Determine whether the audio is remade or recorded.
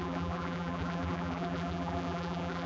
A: remade